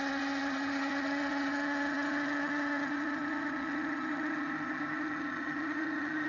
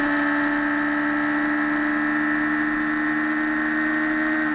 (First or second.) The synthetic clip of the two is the first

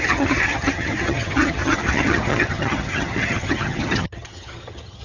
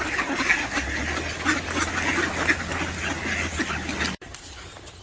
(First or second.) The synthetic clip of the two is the first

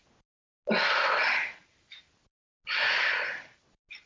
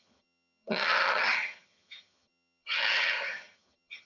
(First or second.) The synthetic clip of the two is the second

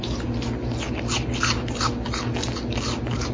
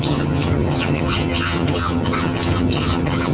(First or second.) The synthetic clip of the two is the second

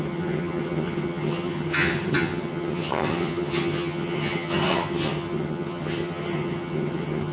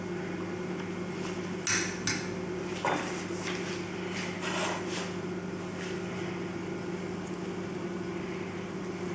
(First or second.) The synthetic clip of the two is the first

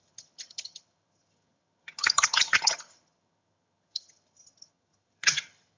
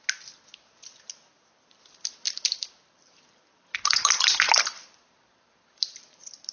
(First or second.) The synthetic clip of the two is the first